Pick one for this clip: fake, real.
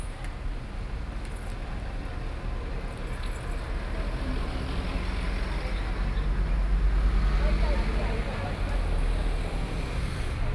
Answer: real